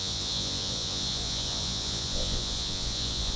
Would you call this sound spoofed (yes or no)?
yes